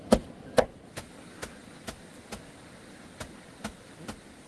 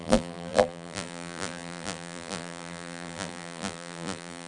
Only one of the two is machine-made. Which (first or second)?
second